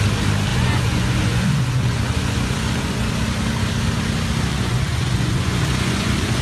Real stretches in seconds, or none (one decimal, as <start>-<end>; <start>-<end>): 0.0-0.5; 3.1-4.5